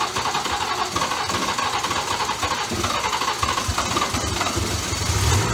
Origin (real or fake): real